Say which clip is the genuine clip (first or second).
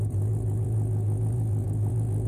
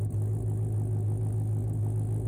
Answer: second